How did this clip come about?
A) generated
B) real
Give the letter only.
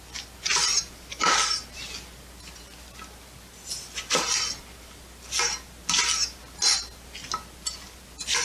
B